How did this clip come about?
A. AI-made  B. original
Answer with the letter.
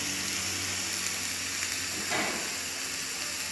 B